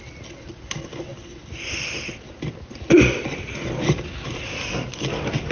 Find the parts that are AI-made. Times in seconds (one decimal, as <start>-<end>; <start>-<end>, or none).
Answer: none